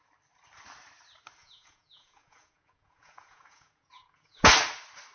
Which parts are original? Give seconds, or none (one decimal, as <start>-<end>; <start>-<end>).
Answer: 0.0-1.4; 4.5-5.1